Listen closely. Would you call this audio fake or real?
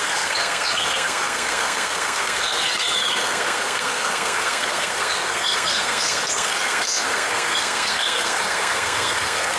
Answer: fake